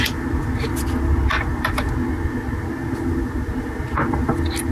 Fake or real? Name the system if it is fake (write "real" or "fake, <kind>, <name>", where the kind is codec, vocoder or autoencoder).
real